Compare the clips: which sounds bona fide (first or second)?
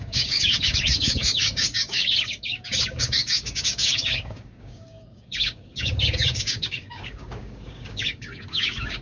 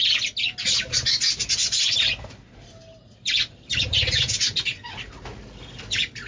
second